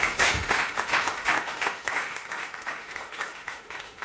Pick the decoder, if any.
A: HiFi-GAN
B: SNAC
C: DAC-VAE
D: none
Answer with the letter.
C